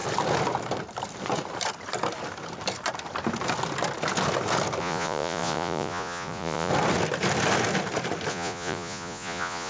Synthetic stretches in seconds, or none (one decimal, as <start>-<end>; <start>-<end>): 4.8-6.7; 8.3-9.7